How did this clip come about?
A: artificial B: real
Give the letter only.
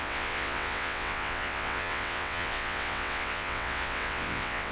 A